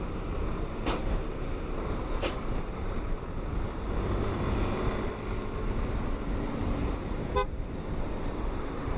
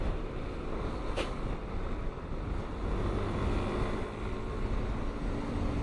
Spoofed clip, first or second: first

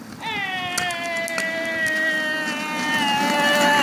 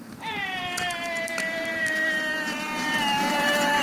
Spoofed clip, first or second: second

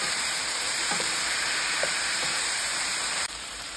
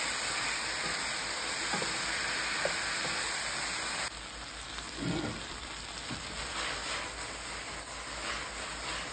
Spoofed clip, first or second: first